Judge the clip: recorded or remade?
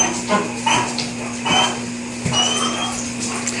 recorded